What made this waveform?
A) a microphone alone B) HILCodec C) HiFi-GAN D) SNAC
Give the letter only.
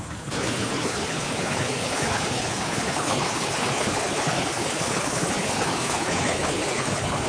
B